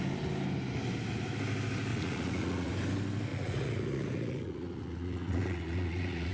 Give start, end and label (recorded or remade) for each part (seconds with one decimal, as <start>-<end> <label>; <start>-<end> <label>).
0.0-1.9 recorded; 1.9-2.7 remade; 2.7-3.3 recorded; 3.3-6.3 remade